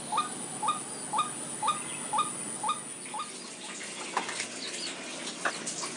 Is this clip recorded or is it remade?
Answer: recorded